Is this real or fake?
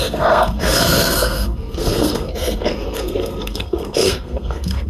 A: fake